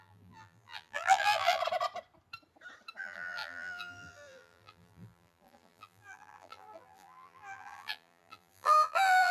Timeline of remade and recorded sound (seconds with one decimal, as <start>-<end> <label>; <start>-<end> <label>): 0.0-1.6 remade; 1.6-3.0 recorded; 3.0-9.3 remade